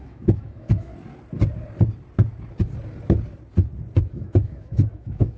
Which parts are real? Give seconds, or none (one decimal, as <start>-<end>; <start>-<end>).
0.9-4.1